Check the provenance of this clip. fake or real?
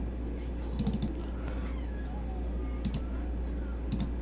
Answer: real